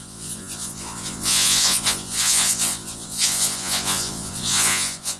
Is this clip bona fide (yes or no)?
no